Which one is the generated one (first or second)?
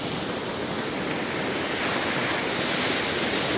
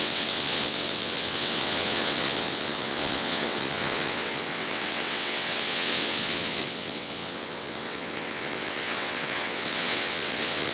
second